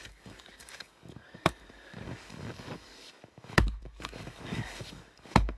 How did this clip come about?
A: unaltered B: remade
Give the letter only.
B